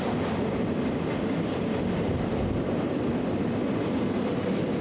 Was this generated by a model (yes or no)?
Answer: no